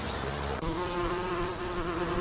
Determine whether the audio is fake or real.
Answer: fake